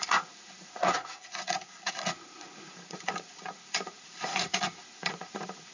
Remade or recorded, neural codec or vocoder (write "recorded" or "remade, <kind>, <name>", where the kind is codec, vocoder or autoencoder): remade, vocoder, Vocos